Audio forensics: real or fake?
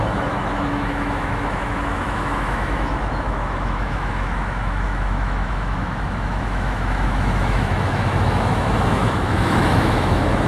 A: fake